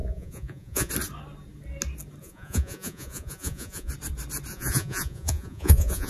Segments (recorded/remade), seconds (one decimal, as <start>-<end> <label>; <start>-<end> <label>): 0.0-0.9 remade; 0.9-2.2 recorded; 2.2-3.9 remade; 3.9-4.5 recorded; 4.5-6.1 remade